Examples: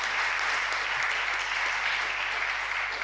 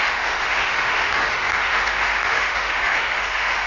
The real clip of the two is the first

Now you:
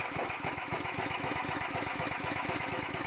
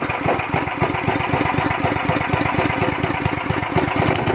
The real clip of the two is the second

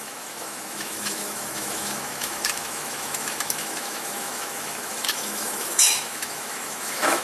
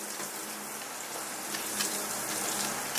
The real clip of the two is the second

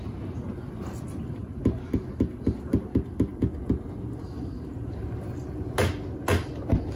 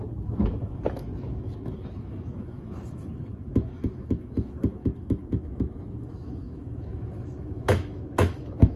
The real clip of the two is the first